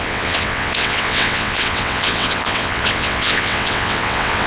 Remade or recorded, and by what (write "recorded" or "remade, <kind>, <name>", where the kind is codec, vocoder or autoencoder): remade, vocoder, WaveNeXt